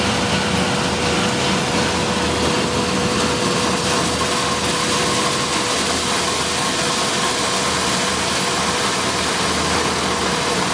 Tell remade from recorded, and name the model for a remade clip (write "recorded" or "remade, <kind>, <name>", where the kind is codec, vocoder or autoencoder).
recorded